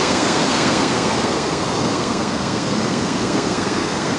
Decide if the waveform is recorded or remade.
remade